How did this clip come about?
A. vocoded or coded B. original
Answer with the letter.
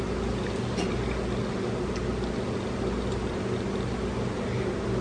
B